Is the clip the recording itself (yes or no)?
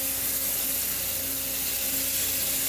yes